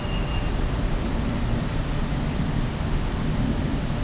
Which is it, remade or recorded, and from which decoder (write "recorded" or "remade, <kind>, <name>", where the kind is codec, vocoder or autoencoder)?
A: recorded